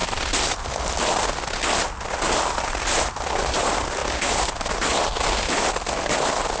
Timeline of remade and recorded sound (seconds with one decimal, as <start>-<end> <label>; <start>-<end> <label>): 0.0-6.6 recorded